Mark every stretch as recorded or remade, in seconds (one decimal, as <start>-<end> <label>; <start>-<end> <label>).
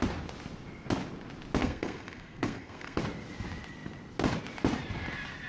0.0-1.6 recorded; 1.6-3.0 remade; 3.0-5.5 recorded